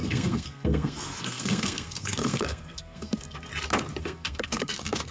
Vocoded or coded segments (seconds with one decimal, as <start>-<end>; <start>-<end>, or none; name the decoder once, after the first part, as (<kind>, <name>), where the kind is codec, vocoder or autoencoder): 0.0-3.5 (codec, SNAC); 4.0-5.1